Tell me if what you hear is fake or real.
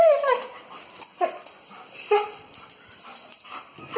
real